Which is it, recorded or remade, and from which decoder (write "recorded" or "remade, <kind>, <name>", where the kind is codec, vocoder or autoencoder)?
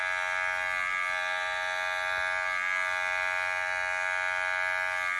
recorded